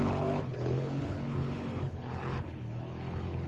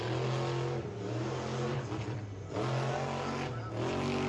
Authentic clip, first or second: second